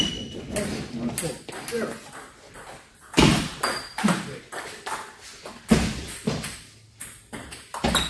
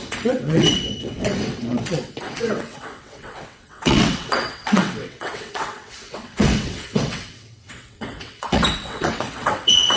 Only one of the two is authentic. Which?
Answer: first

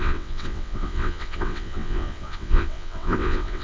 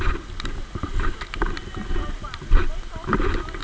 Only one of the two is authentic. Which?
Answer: second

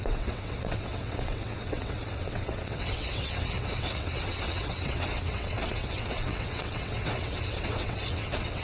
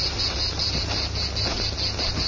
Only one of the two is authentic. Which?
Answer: second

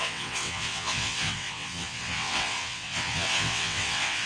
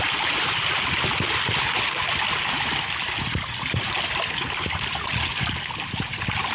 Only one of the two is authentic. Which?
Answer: second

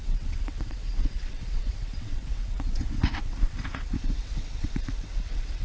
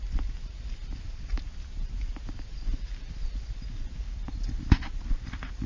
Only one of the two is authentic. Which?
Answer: second